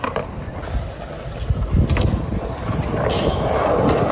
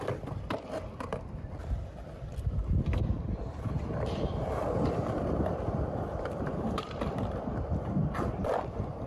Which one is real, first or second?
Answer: first